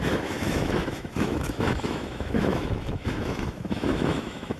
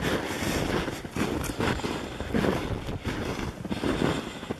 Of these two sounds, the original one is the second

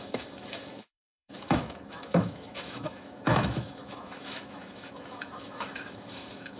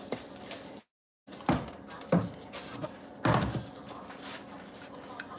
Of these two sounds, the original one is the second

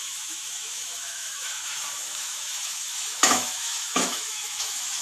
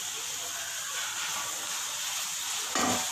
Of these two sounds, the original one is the second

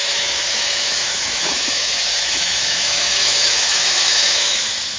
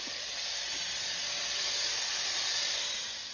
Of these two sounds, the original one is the second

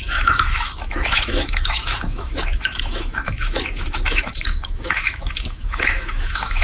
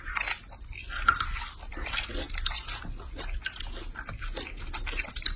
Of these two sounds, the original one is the second